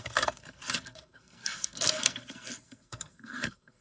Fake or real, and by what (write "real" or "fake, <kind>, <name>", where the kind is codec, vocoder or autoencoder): fake, codec, SNAC